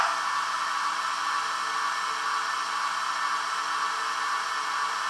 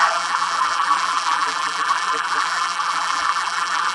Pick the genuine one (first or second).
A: first